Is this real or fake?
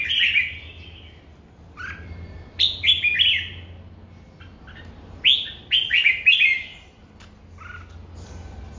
real